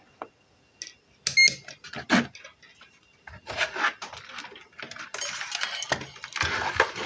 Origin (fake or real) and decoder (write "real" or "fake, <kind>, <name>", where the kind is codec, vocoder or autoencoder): real